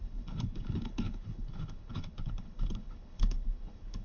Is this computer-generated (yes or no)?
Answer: yes